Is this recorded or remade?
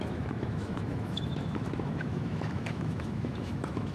remade